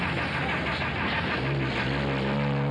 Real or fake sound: real